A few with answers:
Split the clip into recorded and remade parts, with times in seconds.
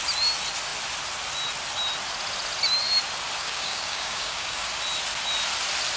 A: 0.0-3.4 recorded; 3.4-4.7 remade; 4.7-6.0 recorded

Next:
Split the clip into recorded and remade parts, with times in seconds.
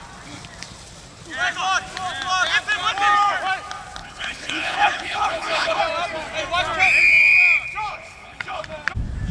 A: 0.0-4.0 recorded; 4.0-5.8 remade; 5.8-7.9 recorded; 7.9-8.6 remade; 8.6-9.3 recorded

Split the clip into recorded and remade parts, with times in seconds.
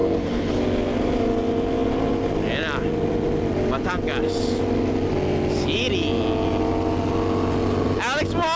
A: 0.0-0.6 remade; 0.6-8.6 recorded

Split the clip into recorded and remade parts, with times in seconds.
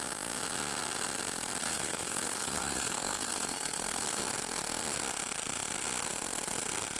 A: 0.0-1.6 recorded; 1.6-4.2 remade; 4.2-7.0 recorded